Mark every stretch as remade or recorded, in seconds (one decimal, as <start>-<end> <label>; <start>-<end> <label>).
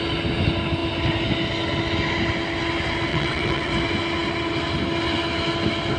0.0-3.1 recorded; 3.1-3.7 remade; 3.7-6.0 recorded